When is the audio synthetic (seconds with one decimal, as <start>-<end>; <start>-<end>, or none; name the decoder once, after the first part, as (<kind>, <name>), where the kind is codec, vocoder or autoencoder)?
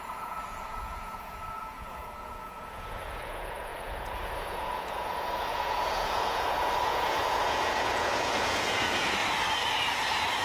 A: 0.0-9.2 (vocoder, Vocos)